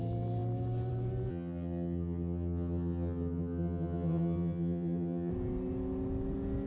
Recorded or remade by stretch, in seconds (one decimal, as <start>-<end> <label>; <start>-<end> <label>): 0.0-1.3 recorded; 1.3-5.3 remade; 5.3-6.7 recorded